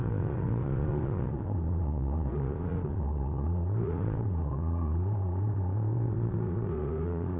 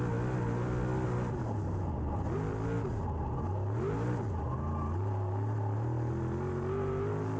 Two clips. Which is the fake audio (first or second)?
first